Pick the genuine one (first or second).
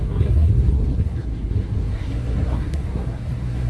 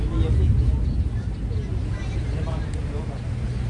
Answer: second